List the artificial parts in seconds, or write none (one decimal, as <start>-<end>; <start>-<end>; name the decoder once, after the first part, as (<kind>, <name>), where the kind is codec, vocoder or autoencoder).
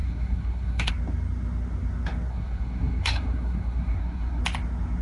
0.0-0.9 (codec, SNAC); 2.3-4.4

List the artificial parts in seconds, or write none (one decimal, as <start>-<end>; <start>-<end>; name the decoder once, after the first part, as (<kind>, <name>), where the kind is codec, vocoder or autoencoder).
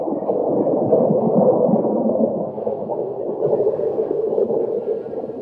1.9-3.2 (codec, SNAC); 3.6-4.3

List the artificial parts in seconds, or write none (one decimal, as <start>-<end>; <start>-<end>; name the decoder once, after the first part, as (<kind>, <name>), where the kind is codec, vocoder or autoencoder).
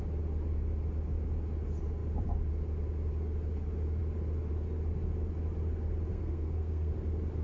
6.1-6.9 (codec, SNAC)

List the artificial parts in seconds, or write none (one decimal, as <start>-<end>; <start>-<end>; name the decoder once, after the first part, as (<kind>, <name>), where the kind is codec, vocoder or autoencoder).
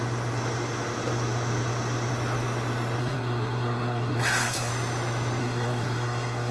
3.0-4.7 (codec, SNAC); 5.4-6.5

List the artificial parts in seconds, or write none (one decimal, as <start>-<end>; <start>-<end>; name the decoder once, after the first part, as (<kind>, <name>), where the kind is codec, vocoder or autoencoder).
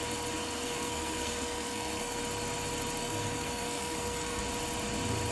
0.4-2.2 (codec, SNAC); 3.0-4.4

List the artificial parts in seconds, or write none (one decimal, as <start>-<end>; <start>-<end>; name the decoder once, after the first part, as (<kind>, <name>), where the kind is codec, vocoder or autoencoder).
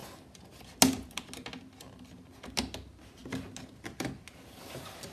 none